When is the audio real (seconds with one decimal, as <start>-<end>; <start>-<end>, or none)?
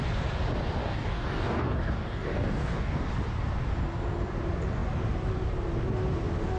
0.0-0.8; 3.1-6.6